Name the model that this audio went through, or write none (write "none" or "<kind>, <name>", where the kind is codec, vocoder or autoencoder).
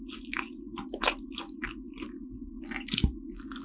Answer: none